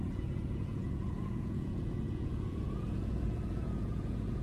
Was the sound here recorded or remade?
remade